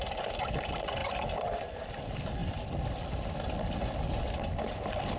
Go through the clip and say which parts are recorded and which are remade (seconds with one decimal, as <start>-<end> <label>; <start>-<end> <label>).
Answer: 0.0-5.2 recorded